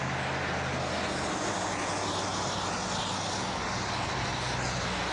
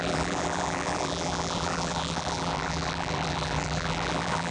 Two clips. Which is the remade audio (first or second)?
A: second